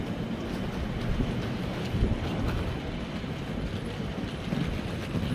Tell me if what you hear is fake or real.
real